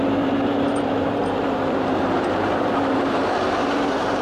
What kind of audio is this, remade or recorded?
remade